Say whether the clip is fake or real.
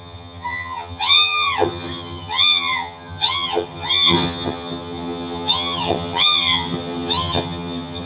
fake